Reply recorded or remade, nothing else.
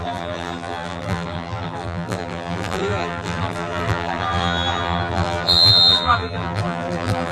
remade